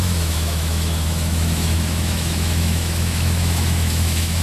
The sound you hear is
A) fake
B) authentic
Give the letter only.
A